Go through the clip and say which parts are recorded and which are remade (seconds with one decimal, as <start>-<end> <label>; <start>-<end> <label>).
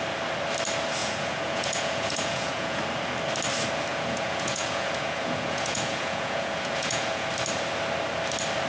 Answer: 0.0-1.0 recorded; 1.0-2.8 remade; 2.8-3.9 recorded; 3.9-7.3 remade; 7.3-8.7 recorded